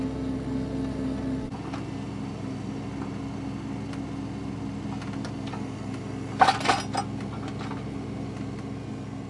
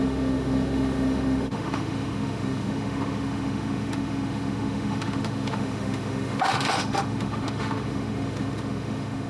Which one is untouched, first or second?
first